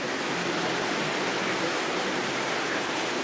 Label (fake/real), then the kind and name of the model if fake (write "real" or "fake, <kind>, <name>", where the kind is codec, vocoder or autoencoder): real